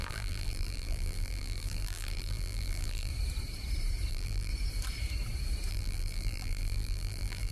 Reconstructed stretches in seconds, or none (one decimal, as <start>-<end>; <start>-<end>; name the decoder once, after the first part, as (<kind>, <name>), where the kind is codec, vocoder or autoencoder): 0.0-3.1 (vocoder, BigVGAN v2); 4.1-4.5; 5.7-7.5